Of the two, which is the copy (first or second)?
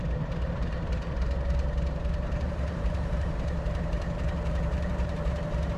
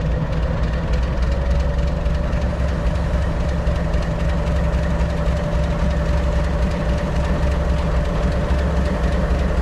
first